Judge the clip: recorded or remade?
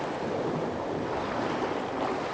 recorded